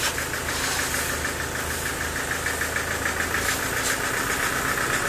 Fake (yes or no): no